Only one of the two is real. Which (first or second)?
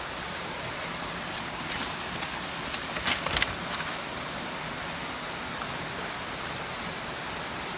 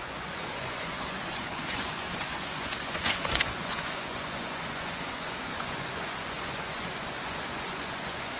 first